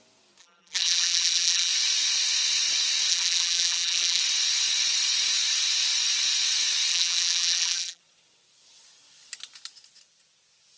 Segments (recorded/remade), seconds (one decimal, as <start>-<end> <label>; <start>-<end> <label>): 0.0-0.4 recorded; 0.4-1.7 remade; 1.7-3.1 recorded; 3.1-4.2 remade; 4.2-6.9 recorded; 6.9-8.0 remade; 8.0-10.8 recorded